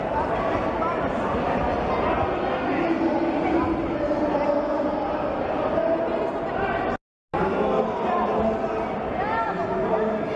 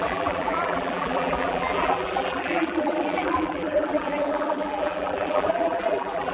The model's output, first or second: second